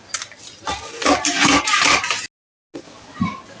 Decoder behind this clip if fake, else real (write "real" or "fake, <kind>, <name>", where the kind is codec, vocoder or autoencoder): real